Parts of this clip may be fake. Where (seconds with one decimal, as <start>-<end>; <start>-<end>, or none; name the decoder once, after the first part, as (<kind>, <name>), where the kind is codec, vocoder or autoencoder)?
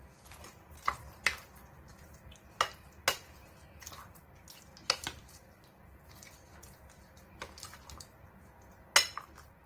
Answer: none